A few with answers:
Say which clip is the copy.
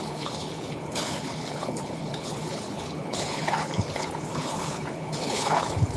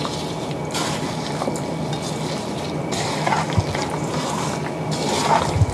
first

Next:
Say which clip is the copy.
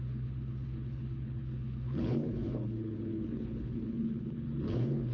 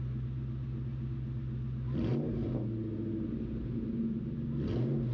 first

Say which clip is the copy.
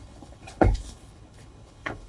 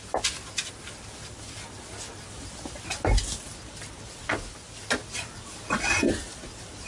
first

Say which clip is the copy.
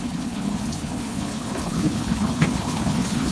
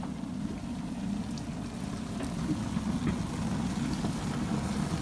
first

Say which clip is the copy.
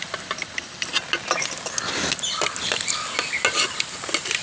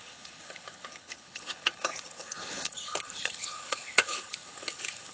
second